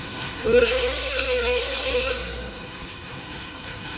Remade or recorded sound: remade